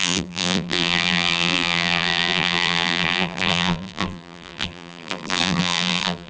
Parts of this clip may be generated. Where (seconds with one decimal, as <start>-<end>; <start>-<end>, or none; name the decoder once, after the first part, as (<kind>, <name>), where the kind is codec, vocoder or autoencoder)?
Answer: 0.0-6.3 (vocoder, BigVGAN v2)

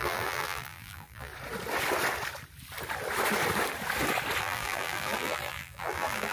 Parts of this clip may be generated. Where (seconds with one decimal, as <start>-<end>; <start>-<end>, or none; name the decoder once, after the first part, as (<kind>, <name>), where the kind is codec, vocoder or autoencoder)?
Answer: 0.0-1.3 (vocoder, BigVGAN v2); 4.4-6.3

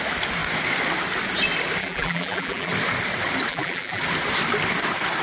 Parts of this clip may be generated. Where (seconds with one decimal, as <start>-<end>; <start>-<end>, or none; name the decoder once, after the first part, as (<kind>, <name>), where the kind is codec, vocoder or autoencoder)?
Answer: 1.8-2.7 (vocoder, BigVGAN v2); 3.5-4.0

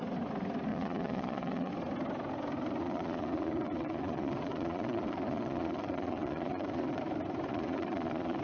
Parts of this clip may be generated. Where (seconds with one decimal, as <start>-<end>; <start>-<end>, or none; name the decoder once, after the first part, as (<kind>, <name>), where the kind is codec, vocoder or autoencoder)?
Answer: 0.7-1.7 (vocoder, Vocos); 2.8-7.0; 7.5-8.4

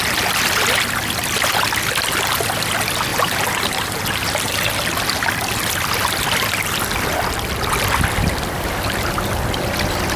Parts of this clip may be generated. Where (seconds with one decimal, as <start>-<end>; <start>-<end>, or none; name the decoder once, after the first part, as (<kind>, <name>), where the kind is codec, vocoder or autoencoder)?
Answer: 3.1-4.7 (vocoder, BigVGAN v2)

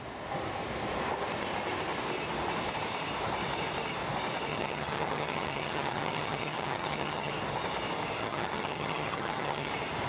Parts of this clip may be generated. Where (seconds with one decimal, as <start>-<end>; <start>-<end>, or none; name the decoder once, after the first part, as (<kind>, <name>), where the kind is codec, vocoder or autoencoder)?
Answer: 4.5-7.3 (vocoder, HiFi-GAN); 8.2-9.7